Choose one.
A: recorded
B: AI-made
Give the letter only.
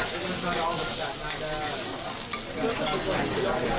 A